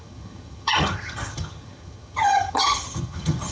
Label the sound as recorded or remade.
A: remade